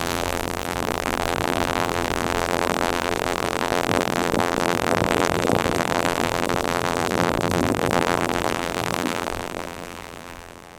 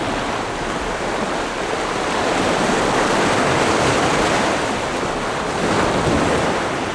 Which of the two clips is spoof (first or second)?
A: first